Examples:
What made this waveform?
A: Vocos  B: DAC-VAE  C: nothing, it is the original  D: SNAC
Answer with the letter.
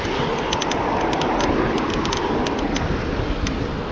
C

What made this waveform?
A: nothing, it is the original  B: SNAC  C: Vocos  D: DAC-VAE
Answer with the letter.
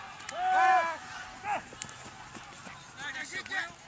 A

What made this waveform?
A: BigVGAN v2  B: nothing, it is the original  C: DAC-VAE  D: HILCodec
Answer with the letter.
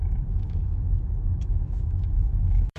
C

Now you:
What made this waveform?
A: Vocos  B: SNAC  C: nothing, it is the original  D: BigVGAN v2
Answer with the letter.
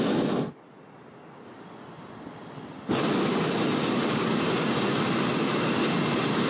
C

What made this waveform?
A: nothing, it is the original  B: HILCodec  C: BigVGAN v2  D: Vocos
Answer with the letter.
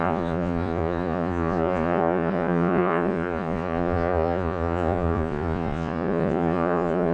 D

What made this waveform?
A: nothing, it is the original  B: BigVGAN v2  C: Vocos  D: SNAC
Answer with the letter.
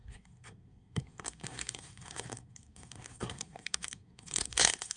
D